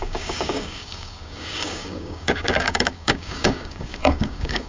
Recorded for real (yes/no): no